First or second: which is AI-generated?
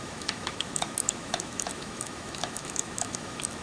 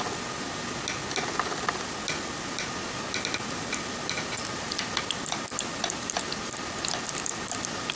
first